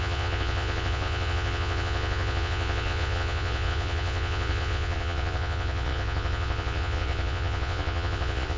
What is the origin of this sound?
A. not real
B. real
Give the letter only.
A